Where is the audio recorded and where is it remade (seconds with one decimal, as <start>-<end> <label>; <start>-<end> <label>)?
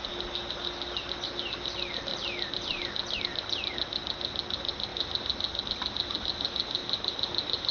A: 0.0-7.7 recorded